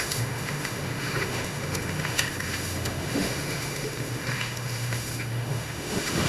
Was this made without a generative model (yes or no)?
no